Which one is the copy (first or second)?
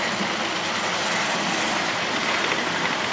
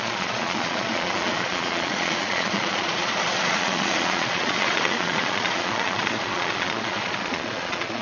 second